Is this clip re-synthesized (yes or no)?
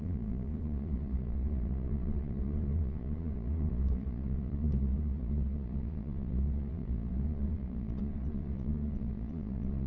yes